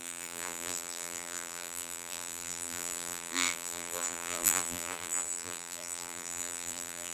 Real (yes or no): no